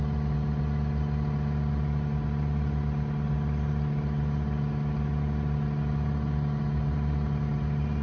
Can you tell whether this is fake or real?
real